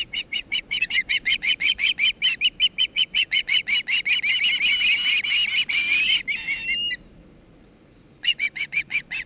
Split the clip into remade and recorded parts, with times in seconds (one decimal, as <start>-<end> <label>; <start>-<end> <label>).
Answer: 0.0-1.9 remade; 1.9-2.8 recorded; 2.8-3.6 remade; 3.6-8.2 recorded; 8.2-9.3 remade